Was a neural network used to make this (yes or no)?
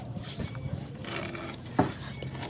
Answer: no